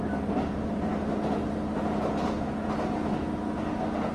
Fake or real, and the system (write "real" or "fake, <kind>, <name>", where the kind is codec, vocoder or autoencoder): real